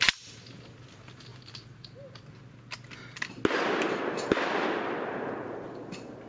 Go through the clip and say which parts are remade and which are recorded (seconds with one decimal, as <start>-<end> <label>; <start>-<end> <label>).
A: 0.0-6.3 recorded